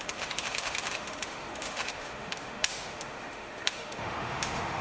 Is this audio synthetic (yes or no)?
yes